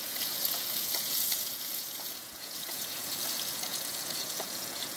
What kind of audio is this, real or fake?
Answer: fake